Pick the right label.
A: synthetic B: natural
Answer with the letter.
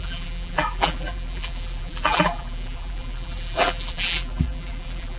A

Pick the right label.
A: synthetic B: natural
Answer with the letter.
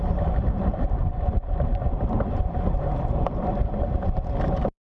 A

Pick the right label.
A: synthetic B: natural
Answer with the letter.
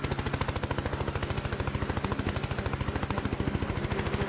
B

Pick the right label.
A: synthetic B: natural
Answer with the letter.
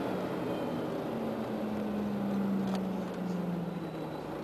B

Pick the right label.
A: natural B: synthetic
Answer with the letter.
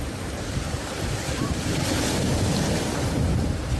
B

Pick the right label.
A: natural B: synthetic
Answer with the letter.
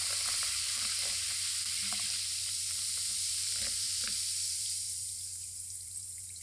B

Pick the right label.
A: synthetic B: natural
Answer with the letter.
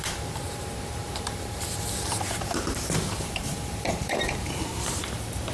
A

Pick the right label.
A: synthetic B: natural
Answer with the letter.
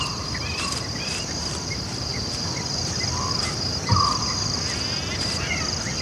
B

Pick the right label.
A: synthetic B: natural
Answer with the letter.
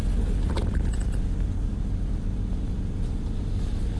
B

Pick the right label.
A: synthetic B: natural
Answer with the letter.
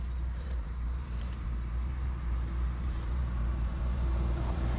A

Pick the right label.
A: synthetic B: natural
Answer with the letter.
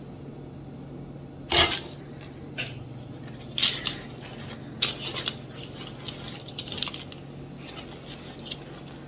B